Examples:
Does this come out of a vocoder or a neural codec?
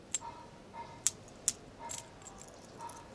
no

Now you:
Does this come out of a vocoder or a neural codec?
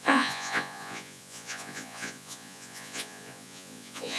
yes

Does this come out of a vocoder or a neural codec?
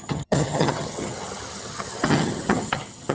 yes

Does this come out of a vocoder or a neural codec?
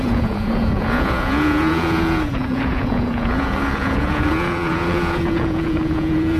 yes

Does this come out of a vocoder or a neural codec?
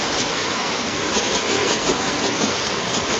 yes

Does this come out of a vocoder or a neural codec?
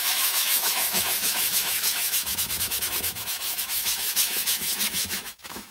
yes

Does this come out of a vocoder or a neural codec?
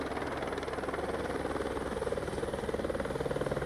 no